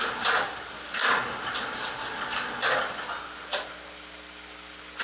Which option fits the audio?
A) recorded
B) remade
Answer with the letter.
A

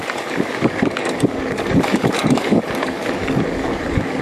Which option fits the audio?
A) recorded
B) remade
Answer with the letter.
B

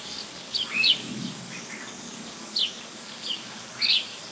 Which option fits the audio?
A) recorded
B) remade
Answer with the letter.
B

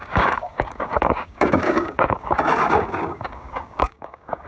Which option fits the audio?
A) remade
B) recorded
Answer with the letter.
A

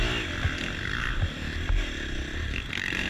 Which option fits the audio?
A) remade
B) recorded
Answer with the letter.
B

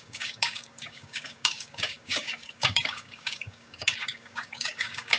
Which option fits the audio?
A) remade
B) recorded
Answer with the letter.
A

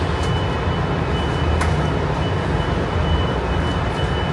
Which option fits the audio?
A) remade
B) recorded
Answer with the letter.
B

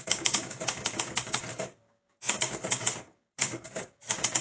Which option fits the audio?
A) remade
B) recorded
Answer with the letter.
A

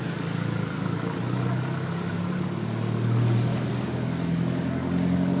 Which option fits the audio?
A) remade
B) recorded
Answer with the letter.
A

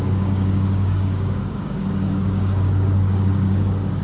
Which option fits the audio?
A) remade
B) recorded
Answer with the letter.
A